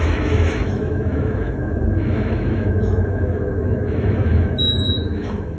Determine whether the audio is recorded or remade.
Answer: remade